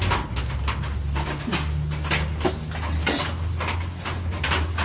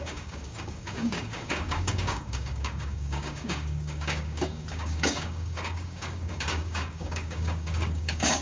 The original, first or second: first